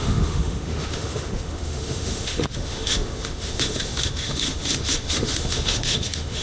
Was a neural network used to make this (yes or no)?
yes